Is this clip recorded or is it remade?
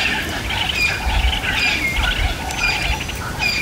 recorded